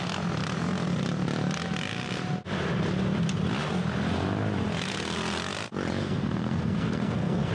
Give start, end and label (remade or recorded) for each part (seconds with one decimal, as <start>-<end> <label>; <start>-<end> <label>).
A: 0.0-6.0 recorded; 6.0-7.5 remade